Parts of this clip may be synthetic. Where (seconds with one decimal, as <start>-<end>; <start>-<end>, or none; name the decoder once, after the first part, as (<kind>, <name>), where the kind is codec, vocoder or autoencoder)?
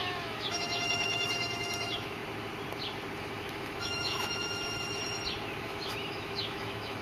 0.0-2.2 (autoencoder, DAC-VAE); 3.2-5.0; 5.6-7.0